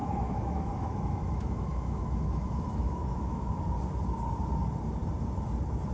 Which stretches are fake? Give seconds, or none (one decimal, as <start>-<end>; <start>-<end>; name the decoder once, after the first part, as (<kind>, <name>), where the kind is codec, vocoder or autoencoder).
0.0-3.5 (autoencoder, DAC-VAE)